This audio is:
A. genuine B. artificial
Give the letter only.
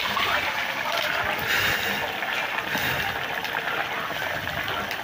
A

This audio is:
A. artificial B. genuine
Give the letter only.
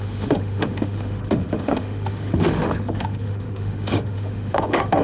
A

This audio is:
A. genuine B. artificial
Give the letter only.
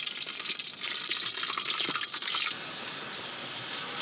A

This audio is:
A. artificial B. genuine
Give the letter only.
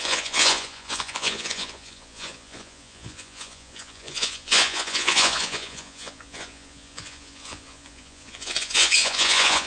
A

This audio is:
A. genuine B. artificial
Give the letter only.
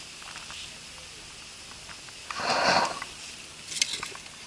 A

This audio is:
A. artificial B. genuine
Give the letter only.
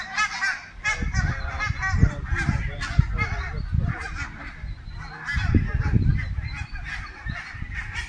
B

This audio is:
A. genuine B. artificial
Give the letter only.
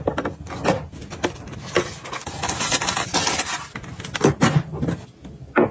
A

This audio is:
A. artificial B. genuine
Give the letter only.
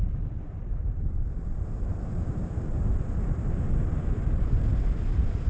B